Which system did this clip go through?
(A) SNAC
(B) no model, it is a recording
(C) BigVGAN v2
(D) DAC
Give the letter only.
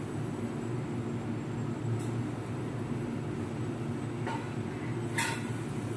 B